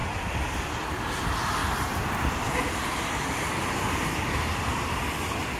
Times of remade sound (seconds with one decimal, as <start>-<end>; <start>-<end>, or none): 1.6-2.4

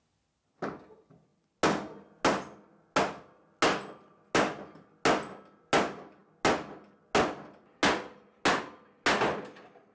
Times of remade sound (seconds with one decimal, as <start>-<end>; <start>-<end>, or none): none

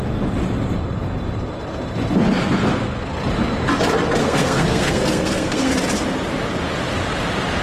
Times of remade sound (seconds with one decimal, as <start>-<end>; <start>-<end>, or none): 4.2-5.7

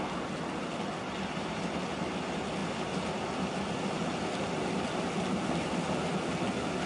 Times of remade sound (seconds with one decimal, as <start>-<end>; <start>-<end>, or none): none